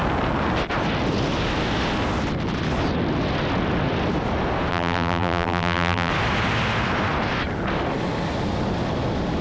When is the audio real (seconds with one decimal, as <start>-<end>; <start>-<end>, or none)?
0.0-4.7; 6.1-9.4